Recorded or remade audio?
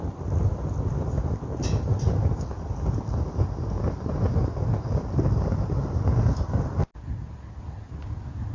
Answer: recorded